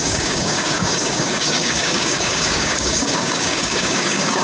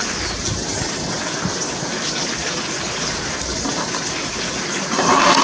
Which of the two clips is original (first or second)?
second